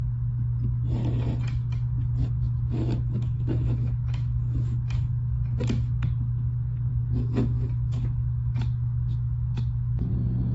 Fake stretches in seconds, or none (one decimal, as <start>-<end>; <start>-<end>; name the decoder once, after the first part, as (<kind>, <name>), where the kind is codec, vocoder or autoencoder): 2.2-5.0 (autoencoder, DAC-VAE); 6.9-10.1